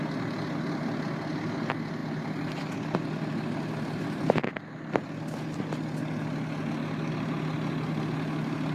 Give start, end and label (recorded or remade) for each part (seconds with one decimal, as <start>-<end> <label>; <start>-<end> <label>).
0.0-8.7 recorded